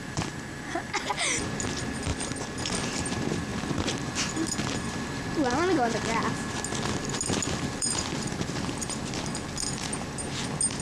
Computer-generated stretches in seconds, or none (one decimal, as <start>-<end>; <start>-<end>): none

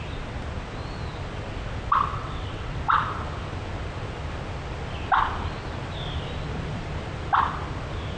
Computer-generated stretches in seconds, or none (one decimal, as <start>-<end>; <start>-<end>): 2.1-2.8

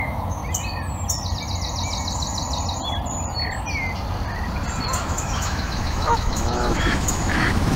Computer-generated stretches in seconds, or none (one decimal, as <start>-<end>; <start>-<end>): 0.0-0.4; 5.0-7.8